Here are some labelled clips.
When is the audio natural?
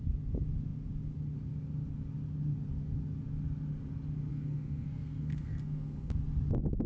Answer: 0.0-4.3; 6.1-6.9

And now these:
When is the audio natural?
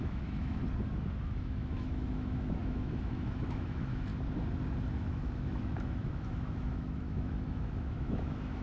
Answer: 0.6-1.2; 4.1-4.9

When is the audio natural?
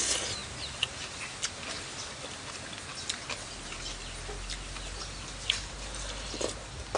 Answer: 0.0-7.0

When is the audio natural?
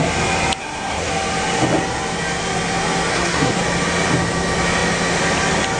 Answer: 0.0-0.6; 1.1-3.1; 3.6-5.8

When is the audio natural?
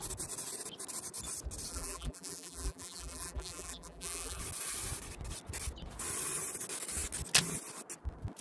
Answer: 0.0-1.7; 4.4-8.4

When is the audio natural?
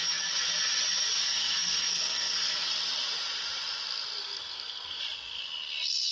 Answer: 0.0-1.2; 2.7-4.2; 5.0-6.1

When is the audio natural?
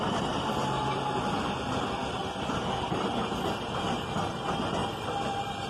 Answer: 0.0-5.7